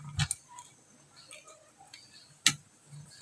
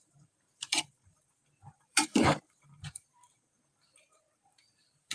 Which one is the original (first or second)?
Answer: first